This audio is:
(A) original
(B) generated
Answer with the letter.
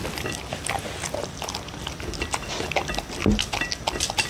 A